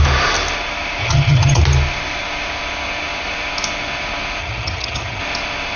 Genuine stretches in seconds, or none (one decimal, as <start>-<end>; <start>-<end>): 0.0-1.0; 1.6-4.4; 5.2-5.8